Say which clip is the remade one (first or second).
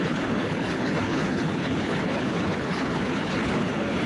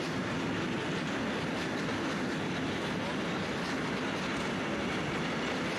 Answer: first